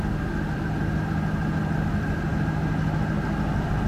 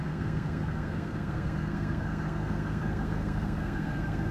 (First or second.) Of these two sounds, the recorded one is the first